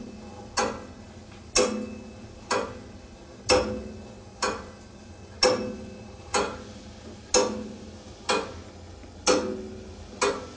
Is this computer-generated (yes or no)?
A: no